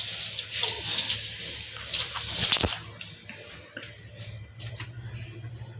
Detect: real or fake real